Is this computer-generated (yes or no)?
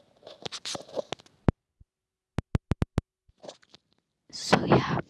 no